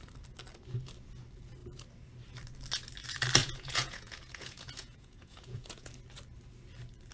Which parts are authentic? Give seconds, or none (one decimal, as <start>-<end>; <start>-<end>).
0.0-3.4; 5.9-7.1